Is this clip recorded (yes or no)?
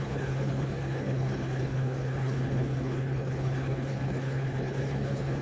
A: no